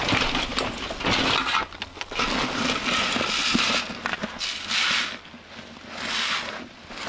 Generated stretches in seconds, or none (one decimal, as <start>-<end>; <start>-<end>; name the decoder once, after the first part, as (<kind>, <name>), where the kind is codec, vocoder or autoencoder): none